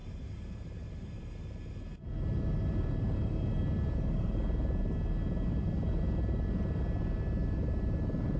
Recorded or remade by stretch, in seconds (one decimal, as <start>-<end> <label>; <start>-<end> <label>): 0.0-1.3 remade; 1.3-8.4 recorded